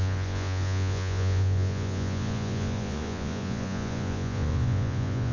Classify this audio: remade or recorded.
remade